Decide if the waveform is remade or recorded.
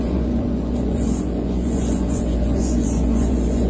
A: remade